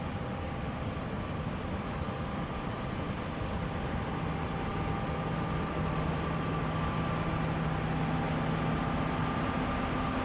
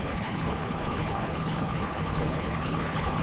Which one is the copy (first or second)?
second